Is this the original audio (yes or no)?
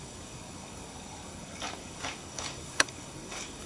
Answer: no